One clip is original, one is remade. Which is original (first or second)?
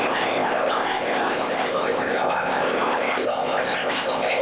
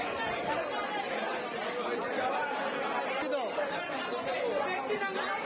second